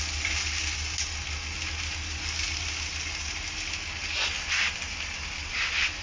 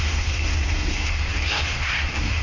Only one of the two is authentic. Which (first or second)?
first